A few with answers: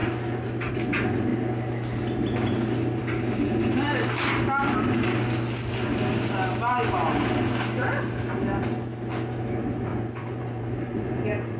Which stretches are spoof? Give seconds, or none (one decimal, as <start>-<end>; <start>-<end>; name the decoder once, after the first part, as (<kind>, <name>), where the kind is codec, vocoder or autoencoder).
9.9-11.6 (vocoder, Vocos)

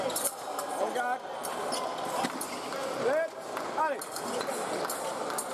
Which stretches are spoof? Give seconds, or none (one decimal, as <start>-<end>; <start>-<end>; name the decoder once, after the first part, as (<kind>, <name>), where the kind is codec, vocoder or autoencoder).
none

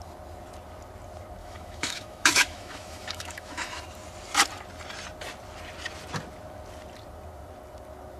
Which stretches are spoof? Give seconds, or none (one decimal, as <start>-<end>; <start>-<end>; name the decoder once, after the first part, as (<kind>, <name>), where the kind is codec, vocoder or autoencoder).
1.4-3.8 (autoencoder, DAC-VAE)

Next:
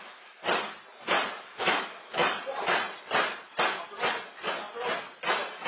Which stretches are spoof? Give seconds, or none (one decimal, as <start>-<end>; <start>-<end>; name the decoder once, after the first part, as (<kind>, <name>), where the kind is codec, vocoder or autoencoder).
0.0-0.4 (autoencoder, DAC-VAE); 1.4-2.2

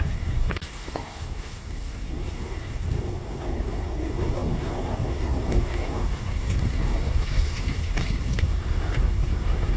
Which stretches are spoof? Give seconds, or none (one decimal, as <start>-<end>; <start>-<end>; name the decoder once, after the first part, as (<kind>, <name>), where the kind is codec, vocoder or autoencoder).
0.0-9.8 (codec, SNAC)

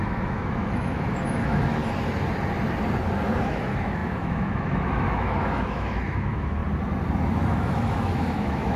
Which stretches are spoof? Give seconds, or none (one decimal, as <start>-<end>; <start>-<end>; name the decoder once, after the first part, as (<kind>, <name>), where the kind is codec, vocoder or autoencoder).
0.0-1.8 (autoencoder, DAC-VAE); 3.4-6.6; 7.3-8.8